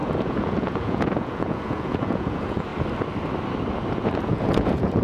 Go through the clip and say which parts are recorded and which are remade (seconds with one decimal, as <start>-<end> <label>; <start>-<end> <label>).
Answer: 0.0-2.7 remade; 2.7-3.9 recorded; 3.9-5.0 remade